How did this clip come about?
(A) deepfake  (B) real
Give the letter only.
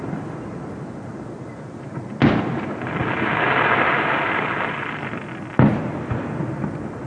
B